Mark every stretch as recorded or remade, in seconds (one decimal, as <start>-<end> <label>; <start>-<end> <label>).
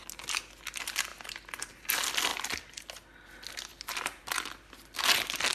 0.0-5.5 recorded